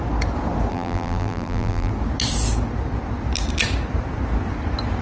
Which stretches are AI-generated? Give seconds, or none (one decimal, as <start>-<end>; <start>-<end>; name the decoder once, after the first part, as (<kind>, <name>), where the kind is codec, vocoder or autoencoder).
0.7-1.9 (vocoder, BigVGAN v2)